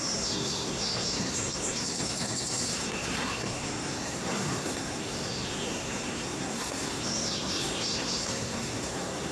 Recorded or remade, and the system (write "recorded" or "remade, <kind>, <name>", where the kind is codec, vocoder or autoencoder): remade, codec, SNAC